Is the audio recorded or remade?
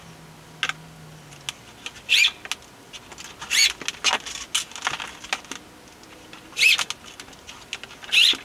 recorded